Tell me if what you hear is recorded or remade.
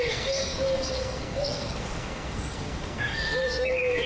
remade